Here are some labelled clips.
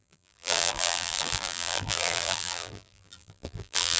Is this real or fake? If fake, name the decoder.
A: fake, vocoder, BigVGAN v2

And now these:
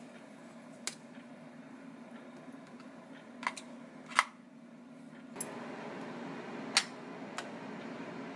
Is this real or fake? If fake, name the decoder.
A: real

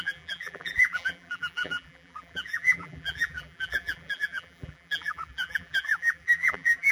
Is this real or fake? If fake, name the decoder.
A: fake, vocoder, BigVGAN v2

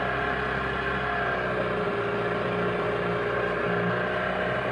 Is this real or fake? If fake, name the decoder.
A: real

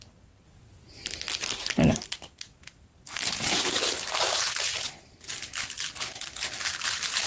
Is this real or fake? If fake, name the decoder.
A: real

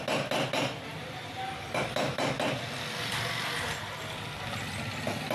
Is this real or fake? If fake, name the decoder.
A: real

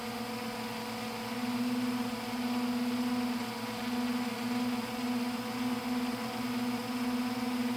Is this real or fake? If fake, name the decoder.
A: real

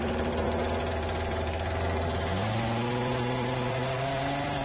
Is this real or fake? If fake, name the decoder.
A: fake, vocoder, BigVGAN v2